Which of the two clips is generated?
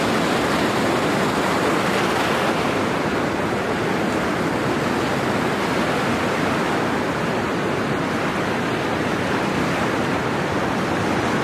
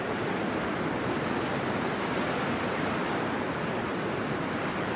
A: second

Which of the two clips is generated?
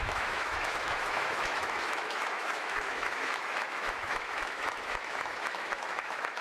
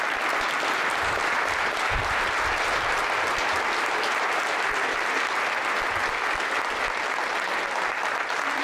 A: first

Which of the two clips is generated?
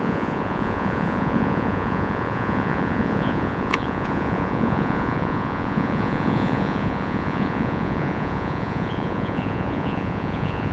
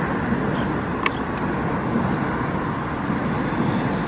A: first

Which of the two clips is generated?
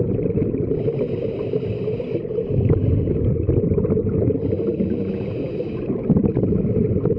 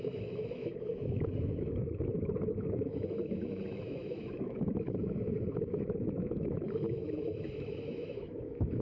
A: second